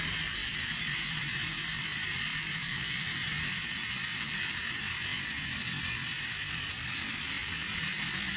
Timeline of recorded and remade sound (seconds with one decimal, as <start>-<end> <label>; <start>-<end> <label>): 0.0-0.4 recorded; 0.4-1.4 remade; 1.4-2.3 recorded; 2.3-4.6 remade; 4.6-7.4 recorded; 7.4-8.0 remade; 8.0-8.4 recorded